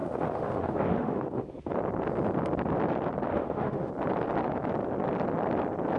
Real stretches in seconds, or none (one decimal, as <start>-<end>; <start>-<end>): 1.7-3.3; 3.9-6.0